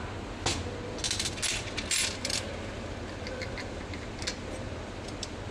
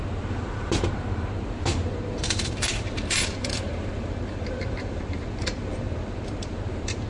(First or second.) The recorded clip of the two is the first